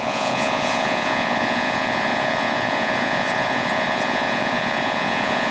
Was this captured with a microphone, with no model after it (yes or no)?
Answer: no